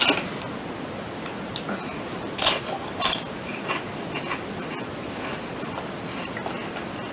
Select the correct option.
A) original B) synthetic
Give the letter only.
A